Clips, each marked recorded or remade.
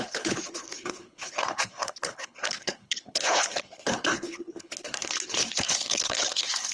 remade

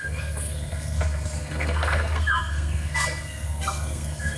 remade